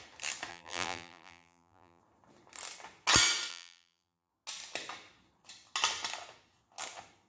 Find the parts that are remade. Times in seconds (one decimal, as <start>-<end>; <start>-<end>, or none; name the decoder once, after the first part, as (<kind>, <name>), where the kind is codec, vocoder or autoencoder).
0.5-2.0 (vocoder, BigVGAN v2); 3.5-4.3